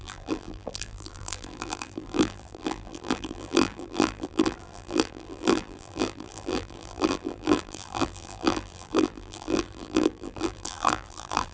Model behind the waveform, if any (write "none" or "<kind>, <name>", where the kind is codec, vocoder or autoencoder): vocoder, BigVGAN v2